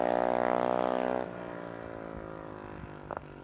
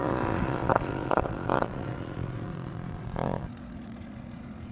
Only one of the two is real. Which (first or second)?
first